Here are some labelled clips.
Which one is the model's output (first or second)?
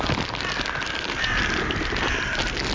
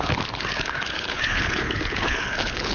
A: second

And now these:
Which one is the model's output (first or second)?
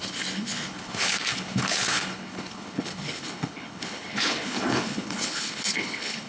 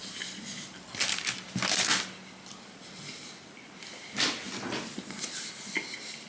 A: first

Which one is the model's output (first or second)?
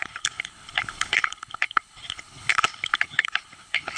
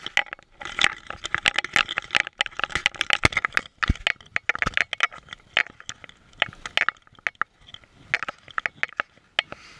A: first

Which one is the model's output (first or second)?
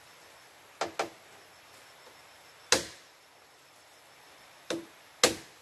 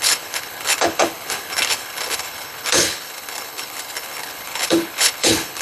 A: second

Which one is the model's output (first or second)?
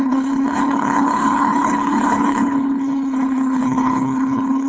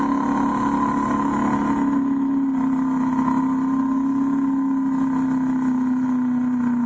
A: first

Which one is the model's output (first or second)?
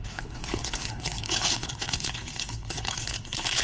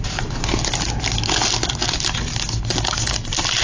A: first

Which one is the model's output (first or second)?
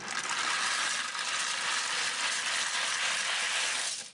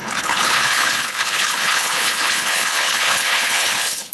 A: second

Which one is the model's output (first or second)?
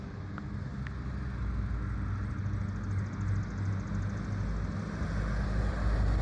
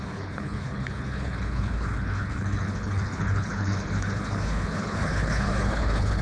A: second